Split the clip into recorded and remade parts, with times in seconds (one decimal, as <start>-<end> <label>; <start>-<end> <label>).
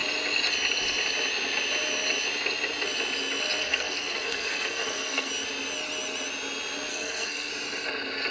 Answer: 0.0-3.6 recorded; 3.6-5.3 remade; 5.3-6.9 recorded; 6.9-7.5 remade; 7.5-8.3 recorded